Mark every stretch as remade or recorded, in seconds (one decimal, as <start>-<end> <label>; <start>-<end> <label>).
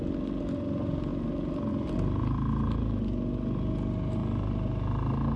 0.0-5.4 recorded